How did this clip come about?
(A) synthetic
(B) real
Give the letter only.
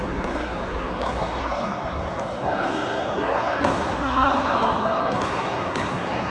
A